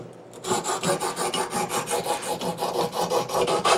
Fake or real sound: real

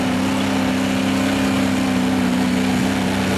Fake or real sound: real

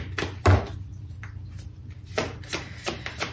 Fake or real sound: fake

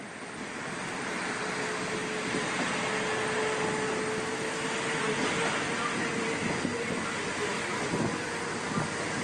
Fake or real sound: real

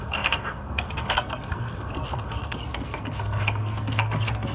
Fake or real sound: fake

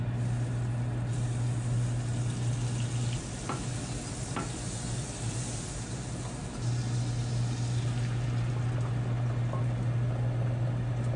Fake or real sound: real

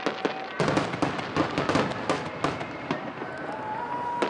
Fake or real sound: real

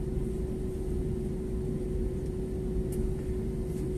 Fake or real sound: real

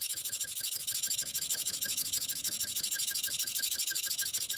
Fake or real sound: fake